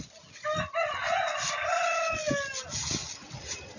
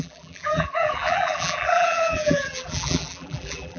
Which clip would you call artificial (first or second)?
second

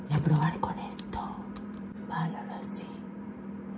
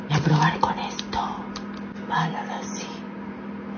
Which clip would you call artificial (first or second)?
first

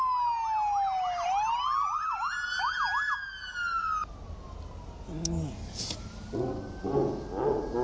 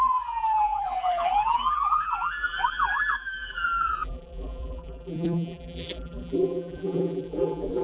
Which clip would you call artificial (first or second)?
second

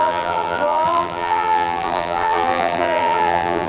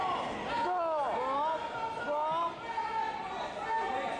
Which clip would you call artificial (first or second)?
first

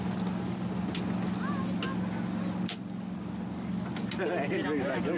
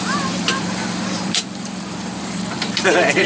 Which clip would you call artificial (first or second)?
second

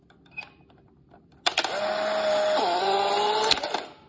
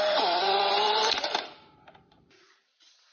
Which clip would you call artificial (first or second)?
second